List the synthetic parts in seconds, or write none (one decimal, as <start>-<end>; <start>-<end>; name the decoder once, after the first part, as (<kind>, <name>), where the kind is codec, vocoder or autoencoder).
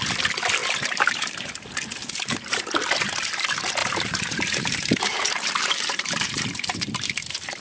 0.6-1.5 (vocoder, BigVGAN v2); 2.0-2.7; 3.8-7.6